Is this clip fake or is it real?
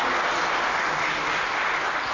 real